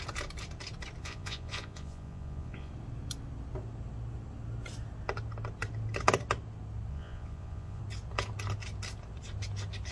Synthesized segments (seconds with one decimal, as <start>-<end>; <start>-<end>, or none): 1.0-2.7; 6.9-7.8